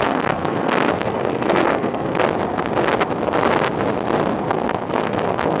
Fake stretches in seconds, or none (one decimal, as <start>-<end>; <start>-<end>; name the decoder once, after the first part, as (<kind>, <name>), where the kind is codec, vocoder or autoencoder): 0.0-2.2 (codec, SNAC); 4.5-5.6